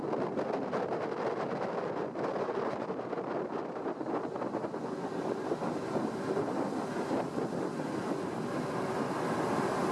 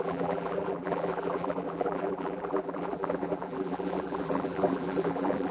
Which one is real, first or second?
first